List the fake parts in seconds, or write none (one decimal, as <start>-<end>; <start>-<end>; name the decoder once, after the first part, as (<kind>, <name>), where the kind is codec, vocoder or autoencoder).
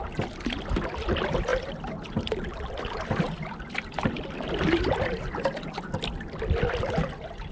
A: none